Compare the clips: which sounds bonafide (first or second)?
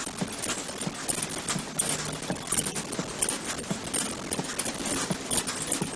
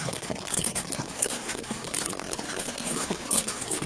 first